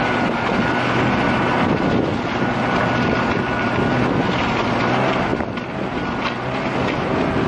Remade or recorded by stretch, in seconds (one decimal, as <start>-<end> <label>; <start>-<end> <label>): 0.0-7.5 recorded